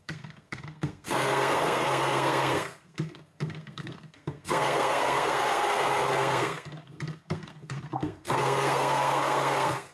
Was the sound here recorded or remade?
remade